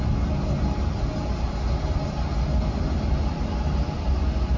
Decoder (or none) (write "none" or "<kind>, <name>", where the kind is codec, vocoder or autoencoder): none